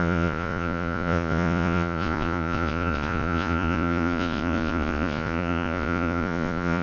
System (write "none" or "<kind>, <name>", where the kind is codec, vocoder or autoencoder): vocoder, Vocos